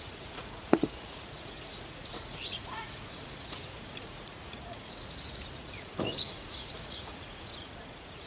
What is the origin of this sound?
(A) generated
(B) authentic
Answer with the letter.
A